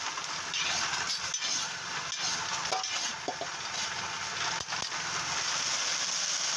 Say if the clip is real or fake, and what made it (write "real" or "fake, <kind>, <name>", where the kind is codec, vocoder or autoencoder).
real